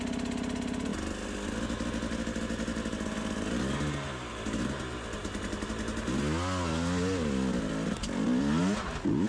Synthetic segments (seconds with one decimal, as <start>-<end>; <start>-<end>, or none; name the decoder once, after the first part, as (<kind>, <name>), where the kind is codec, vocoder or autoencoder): none